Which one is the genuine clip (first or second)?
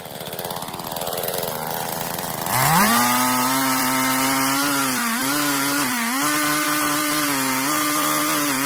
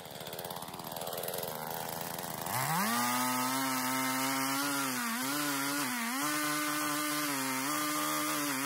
second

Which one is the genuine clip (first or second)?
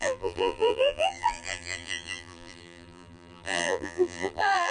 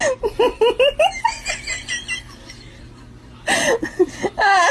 second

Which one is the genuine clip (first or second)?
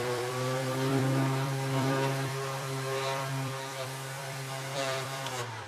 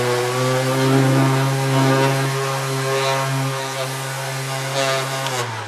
second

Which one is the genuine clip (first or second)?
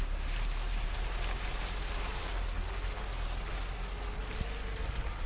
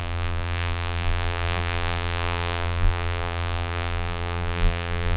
first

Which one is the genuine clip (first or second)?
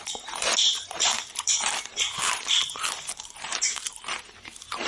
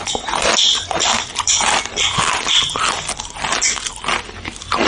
second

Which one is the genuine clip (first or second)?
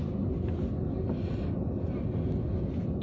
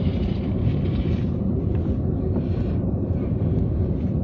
first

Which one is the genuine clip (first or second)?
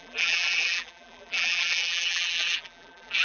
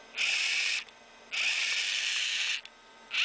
second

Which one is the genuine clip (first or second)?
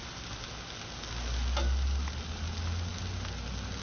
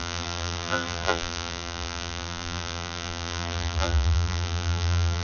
first